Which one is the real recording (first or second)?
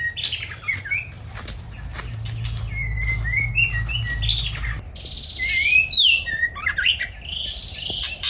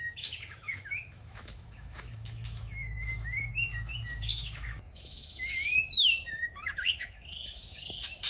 first